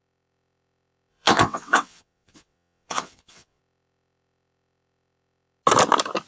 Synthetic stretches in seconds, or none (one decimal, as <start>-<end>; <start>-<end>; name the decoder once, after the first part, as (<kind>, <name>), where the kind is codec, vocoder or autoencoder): 1.1-3.6 (vocoder, WaveNeXt)